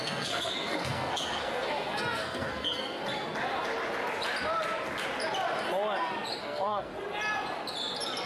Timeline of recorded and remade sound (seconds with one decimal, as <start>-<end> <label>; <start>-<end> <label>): 0.0-3.0 remade; 3.0-6.4 recorded; 6.4-6.9 remade; 6.9-8.3 recorded